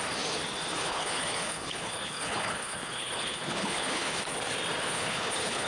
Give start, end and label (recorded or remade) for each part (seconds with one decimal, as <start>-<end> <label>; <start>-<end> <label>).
0.0-0.8 recorded; 0.8-4.2 remade; 4.2-4.8 recorded; 4.8-5.7 remade